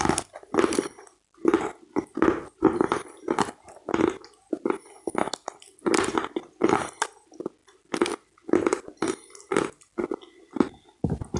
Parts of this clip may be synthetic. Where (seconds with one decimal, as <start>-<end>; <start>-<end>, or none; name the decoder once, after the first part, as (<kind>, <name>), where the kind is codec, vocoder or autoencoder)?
none